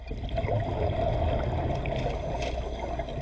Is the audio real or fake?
real